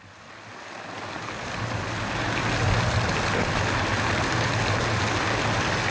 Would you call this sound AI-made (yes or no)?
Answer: no